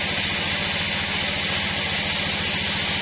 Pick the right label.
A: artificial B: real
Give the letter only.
B